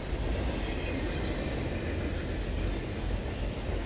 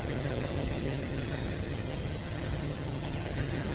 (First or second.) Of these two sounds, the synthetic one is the second